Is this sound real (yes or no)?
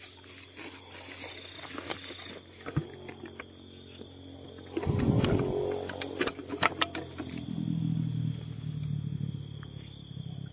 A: yes